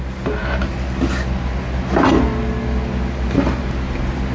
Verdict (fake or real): real